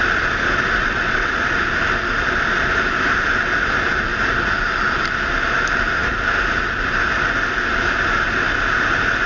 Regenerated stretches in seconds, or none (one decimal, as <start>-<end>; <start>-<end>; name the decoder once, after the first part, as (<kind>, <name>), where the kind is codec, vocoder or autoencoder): 0.8-1.3 (vocoder, WaveNeXt)